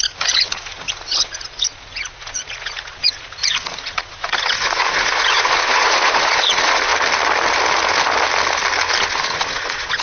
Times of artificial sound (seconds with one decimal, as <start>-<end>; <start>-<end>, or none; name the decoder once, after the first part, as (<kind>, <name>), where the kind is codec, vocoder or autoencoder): 0.0-6.9 (vocoder, Vocos); 9.1-10.0